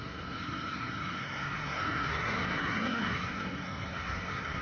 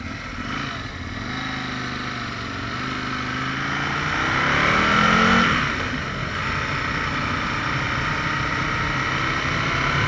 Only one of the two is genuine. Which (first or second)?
second